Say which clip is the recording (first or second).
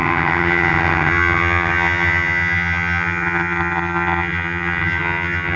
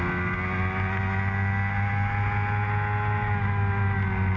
second